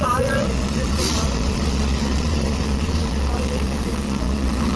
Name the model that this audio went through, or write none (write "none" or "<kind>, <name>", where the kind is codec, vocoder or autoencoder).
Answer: vocoder, Vocos